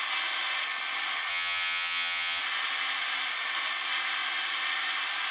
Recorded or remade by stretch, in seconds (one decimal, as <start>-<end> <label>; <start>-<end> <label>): 0.0-1.3 recorded; 1.3-2.4 remade; 2.4-5.3 recorded